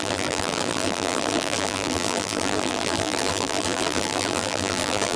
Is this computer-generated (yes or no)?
yes